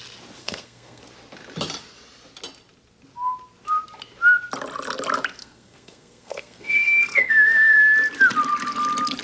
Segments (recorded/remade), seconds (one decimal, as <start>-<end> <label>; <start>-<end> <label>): 0.0-0.4 recorded; 0.4-1.0 remade; 1.0-5.4 recorded; 5.4-7.8 remade; 7.8-9.2 recorded